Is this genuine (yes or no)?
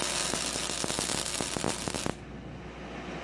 yes